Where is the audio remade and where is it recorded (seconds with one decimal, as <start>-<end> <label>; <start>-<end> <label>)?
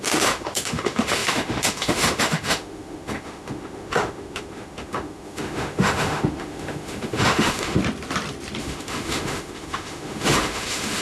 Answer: 0.0-7.8 remade; 7.8-8.6 recorded; 8.6-11.0 remade